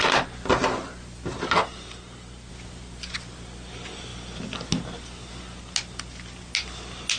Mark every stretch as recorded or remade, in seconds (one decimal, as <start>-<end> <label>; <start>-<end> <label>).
0.0-7.2 recorded